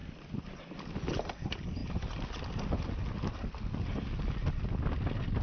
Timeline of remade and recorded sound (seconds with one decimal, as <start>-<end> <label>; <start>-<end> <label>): 0.0-5.4 recorded